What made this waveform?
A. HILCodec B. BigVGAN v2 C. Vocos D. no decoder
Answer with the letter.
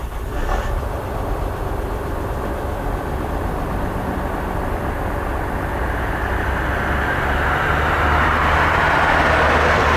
D